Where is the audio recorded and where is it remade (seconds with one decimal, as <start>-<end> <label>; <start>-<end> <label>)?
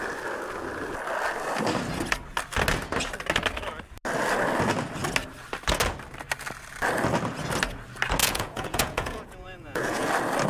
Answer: 0.0-8.2 recorded; 8.2-10.1 remade; 10.1-10.5 recorded